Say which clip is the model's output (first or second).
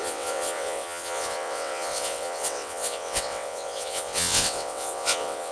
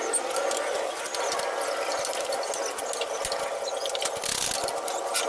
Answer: first